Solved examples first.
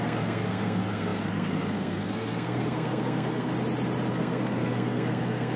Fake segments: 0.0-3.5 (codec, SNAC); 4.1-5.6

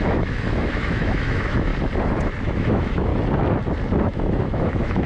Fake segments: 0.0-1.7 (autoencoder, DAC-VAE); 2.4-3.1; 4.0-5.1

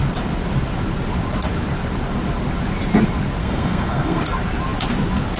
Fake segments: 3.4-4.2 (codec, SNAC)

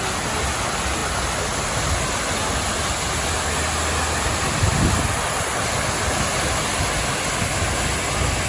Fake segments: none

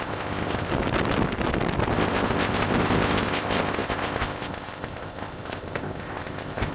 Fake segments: 0.0-0.7 (codec, ZipCodec); 1.9-6.7